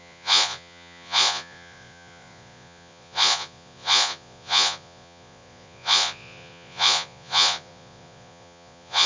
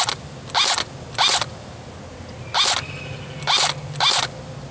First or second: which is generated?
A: first